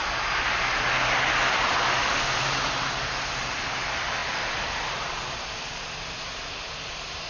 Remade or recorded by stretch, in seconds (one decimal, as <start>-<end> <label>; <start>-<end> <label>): 0.0-7.3 recorded